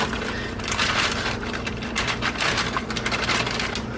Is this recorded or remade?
recorded